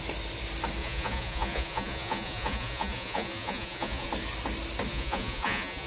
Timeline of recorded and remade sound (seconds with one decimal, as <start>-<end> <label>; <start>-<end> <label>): 0.0-0.8 recorded; 0.8-4.1 remade; 4.1-4.9 recorded; 4.9-5.9 remade